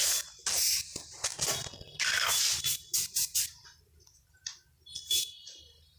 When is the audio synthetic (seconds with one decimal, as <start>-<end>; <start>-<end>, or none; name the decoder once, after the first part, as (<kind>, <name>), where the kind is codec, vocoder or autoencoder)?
none